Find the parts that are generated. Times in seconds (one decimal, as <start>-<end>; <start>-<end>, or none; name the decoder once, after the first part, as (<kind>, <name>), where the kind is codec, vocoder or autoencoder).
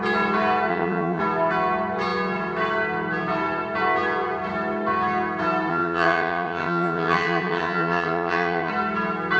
0.7-1.2 (vocoder, HiFi-GAN); 5.7-8.7